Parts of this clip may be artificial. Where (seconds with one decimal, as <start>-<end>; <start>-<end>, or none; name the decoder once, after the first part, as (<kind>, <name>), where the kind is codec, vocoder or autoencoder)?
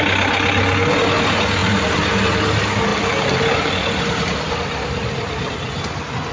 2.9-5.5 (vocoder, BigVGAN v2)